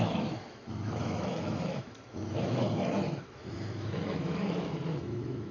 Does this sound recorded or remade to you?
remade